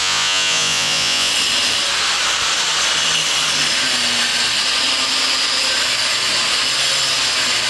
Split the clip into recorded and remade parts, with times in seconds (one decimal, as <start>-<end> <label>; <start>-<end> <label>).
0.0-1.3 remade; 1.3-7.7 recorded